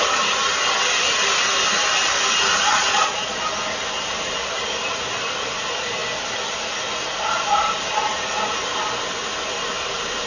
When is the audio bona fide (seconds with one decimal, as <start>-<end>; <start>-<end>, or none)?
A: 0.0-2.7; 3.4-10.3